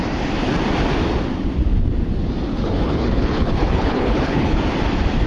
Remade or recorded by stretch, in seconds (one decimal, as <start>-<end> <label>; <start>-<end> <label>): 0.0-2.5 recorded; 2.5-4.6 remade; 4.6-5.3 recorded